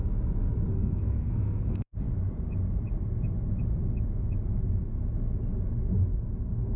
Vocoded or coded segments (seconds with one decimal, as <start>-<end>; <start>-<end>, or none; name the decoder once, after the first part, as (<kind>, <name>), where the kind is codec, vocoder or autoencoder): 0.7-1.9 (codec, SNAC)